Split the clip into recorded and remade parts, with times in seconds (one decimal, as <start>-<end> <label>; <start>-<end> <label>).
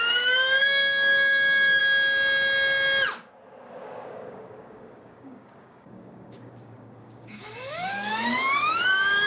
0.0-1.8 remade; 1.8-3.7 recorded; 3.7-9.3 remade